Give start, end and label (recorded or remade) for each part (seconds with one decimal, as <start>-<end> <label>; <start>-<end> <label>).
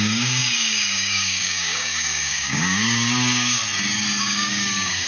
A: 0.0-3.6 remade; 3.6-4.2 recorded; 4.2-5.1 remade